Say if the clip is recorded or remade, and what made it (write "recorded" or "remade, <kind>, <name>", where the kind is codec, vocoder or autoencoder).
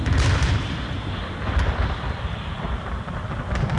recorded